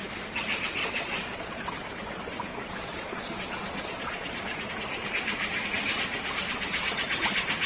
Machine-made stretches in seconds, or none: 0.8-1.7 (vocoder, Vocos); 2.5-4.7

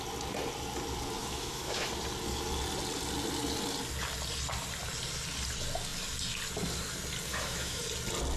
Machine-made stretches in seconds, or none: 1.2-1.9 (autoencoder, DAC-VAE); 7.3-7.8

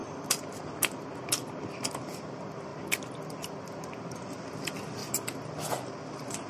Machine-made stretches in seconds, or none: none

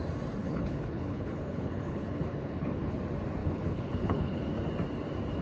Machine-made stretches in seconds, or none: 0.4-3.0 (codec, HILCodec); 3.4-4.5

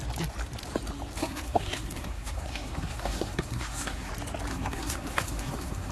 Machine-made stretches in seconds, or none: 1.2-4.1 (codec, SNAC); 4.5-5.9

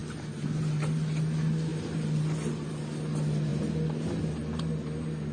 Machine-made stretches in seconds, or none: none

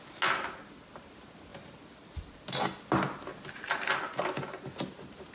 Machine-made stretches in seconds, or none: none

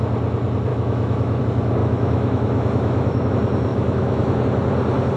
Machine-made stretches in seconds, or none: 0.7-1.4 (autoencoder, DAC-VAE); 1.8-3.3; 3.7-4.4